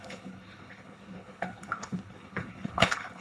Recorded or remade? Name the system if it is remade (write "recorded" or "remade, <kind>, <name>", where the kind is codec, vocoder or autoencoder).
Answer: remade, codec, HILCodec